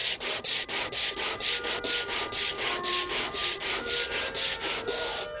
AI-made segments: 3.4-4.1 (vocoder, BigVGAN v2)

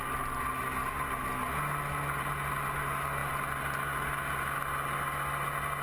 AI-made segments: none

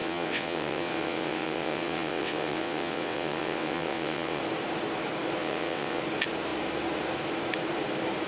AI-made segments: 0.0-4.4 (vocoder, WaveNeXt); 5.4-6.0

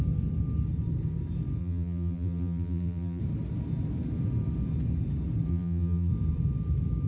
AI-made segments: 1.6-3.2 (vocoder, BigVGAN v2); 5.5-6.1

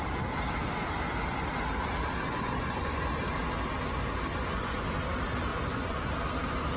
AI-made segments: 2.3-3.0 (vocoder, Vocos); 4.3-4.8; 5.5-6.0

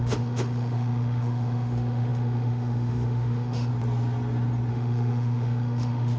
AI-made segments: 0.0-3.7 (autoencoder, DAC-VAE); 4.7-6.2

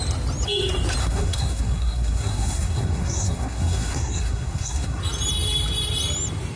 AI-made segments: 1.0-5.0 (codec, SNAC)